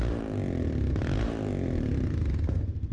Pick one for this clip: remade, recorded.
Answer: recorded